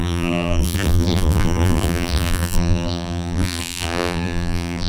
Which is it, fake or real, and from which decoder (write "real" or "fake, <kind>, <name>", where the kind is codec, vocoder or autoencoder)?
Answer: fake, vocoder, BigVGAN v2